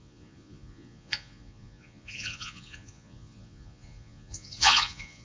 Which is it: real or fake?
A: fake